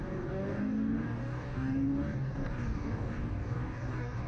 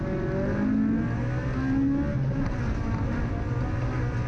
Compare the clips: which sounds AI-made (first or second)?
first